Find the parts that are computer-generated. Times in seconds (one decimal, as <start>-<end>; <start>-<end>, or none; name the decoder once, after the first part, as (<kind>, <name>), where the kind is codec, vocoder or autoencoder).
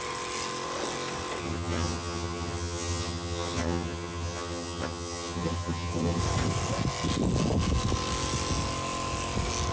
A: 1.4-6.2 (vocoder, HiFi-GAN)